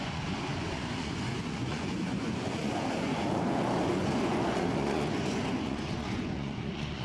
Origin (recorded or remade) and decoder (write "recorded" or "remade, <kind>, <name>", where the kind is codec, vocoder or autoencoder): remade, vocoder, Vocos